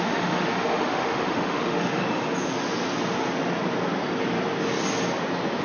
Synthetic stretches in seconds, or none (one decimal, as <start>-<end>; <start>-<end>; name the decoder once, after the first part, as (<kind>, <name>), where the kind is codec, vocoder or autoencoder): 0.0-2.0 (autoencoder, DAC-VAE)